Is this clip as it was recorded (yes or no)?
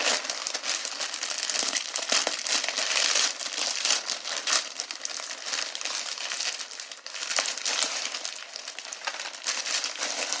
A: yes